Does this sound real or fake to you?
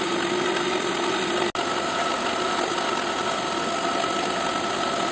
real